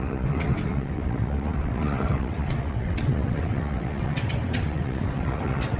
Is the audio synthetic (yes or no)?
yes